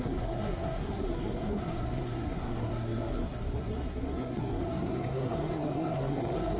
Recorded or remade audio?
remade